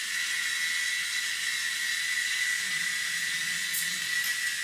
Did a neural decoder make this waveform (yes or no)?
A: no